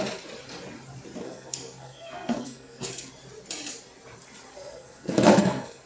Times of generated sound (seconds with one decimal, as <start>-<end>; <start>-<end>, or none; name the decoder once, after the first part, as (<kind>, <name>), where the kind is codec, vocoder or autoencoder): 1.2-3.1 (codec, SNAC); 4.5-5.9